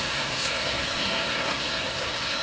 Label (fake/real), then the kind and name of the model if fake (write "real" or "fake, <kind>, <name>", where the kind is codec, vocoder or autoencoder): fake, codec, SNAC